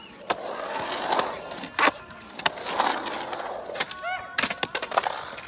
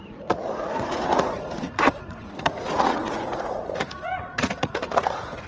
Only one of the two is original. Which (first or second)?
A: first